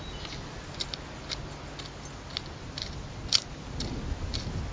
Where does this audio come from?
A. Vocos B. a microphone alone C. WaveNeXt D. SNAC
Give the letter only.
B